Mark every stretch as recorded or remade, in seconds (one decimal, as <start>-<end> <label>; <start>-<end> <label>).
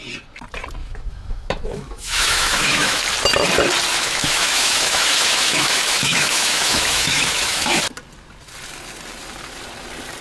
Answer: 0.0-0.8 recorded; 0.8-3.0 remade; 3.0-3.9 recorded; 3.9-7.8 remade; 7.8-10.2 recorded